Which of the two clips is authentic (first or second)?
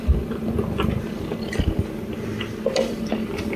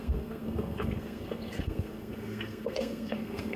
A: first